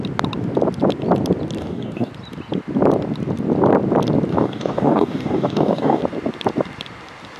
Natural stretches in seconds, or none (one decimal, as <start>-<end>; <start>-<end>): 0.0-1.6; 2.1-4.3; 6.0-7.4